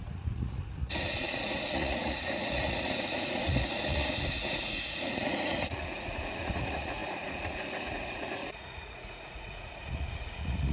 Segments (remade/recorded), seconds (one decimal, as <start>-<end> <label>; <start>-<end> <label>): 0.0-10.7 remade